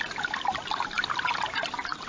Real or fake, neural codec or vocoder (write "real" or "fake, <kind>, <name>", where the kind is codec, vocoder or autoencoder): real